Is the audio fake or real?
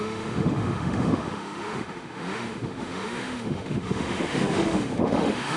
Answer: fake